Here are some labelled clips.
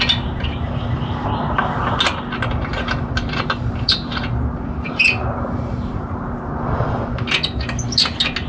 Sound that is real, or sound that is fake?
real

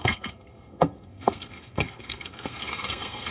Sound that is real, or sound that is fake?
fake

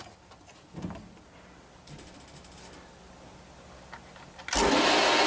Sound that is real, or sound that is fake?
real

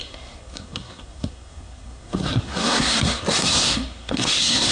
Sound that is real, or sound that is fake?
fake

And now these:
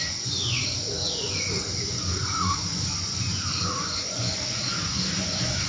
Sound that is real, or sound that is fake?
fake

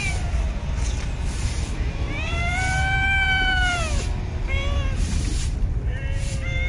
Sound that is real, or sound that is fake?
fake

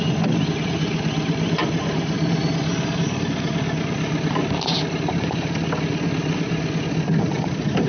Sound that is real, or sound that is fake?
real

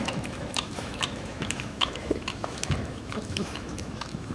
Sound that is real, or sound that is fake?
fake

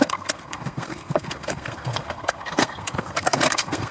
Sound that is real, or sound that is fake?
fake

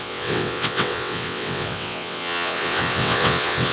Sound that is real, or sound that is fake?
fake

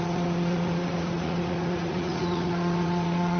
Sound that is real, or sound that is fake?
fake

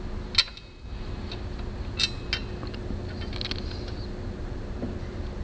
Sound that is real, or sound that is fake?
real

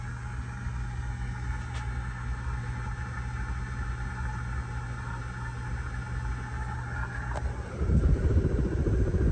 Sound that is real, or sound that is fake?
real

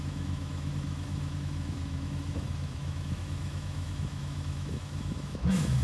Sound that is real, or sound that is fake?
fake